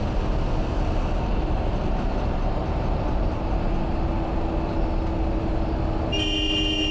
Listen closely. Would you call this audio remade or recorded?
recorded